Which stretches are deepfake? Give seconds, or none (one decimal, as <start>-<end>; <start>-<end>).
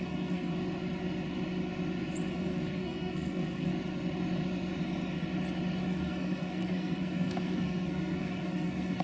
0.0-0.5; 2.3-3.7; 5.9-9.0